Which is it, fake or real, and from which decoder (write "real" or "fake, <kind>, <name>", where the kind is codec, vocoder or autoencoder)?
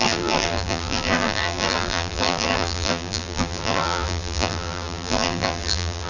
fake, vocoder, BigVGAN v2